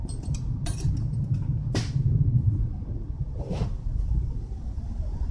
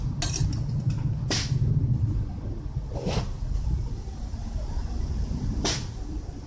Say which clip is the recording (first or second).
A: second